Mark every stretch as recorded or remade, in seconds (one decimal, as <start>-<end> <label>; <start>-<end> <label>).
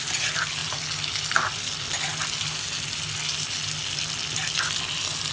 0.0-5.3 recorded